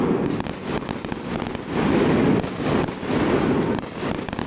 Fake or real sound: real